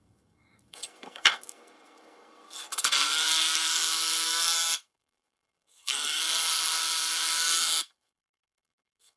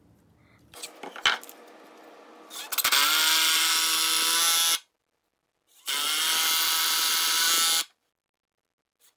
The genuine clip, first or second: second